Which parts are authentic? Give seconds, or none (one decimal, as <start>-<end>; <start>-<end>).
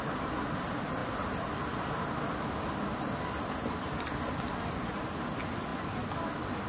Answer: 0.0-6.7